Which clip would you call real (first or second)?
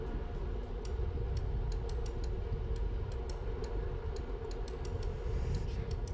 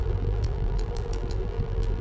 first